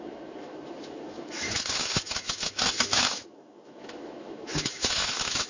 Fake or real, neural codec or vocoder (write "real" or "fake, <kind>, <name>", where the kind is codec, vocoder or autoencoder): fake, autoencoder, DAC-VAE